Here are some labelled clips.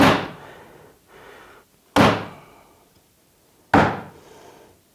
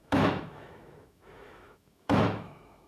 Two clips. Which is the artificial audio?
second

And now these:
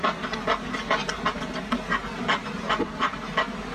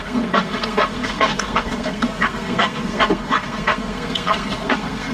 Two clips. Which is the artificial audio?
second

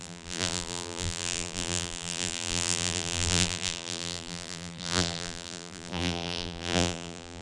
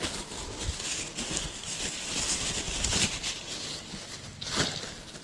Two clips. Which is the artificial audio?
first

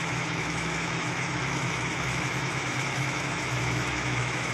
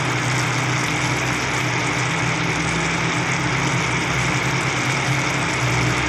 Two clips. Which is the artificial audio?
first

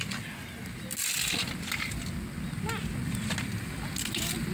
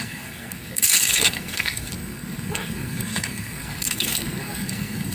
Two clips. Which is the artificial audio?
second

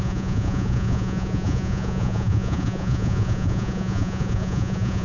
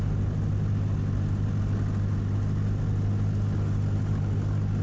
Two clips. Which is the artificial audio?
first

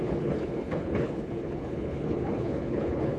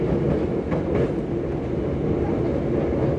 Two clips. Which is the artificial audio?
first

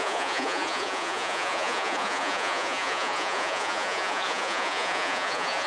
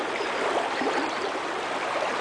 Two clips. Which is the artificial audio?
first